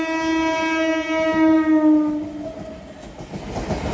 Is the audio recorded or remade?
recorded